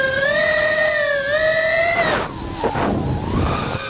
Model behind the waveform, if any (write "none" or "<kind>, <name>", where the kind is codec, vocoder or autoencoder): none